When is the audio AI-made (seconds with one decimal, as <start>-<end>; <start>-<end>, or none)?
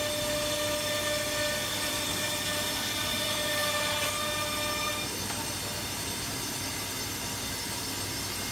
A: none